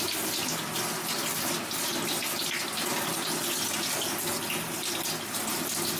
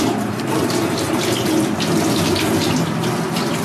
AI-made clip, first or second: second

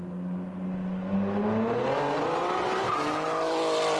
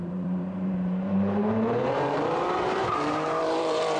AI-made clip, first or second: second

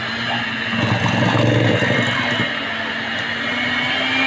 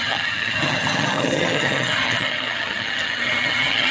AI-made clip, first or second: second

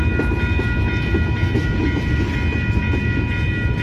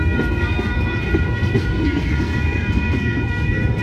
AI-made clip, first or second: second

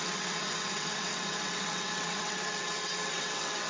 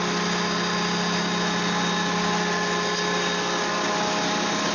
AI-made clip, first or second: first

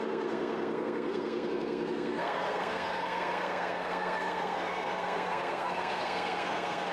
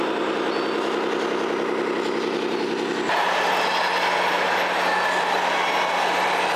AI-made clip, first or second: first